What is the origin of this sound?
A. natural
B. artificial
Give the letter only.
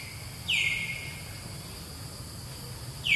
A